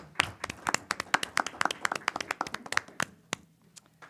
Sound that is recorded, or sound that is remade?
recorded